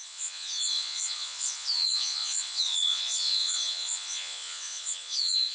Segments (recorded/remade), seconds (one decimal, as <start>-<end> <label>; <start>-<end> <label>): 0.0-5.5 remade